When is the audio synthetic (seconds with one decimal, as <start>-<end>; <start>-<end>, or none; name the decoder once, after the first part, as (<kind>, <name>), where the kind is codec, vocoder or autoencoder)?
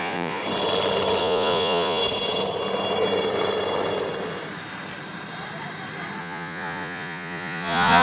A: 0.0-0.4 (vocoder, Vocos); 1.2-2.0; 6.2-8.0